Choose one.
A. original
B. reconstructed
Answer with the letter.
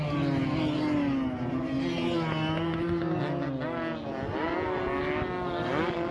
A